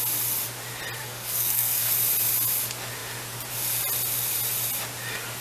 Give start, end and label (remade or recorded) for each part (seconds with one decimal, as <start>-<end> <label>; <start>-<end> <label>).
0.0-1.0 recorded; 1.0-1.9 remade; 1.9-5.4 recorded